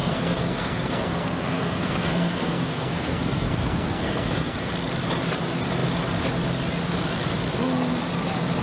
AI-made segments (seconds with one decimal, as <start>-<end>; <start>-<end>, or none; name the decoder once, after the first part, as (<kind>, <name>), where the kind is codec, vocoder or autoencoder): 0.0-4.7 (codec, SNAC)